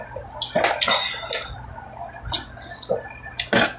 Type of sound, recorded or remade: recorded